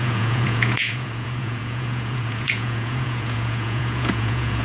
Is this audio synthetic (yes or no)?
yes